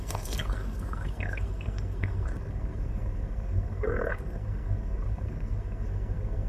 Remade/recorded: remade